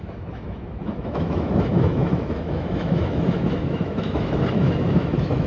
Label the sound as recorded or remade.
remade